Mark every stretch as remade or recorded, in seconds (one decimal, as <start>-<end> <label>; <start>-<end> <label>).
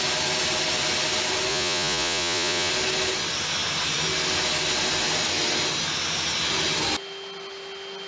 0.0-1.5 recorded; 1.5-2.7 remade; 2.7-8.1 recorded